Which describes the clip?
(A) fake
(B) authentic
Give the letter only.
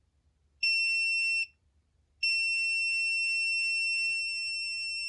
B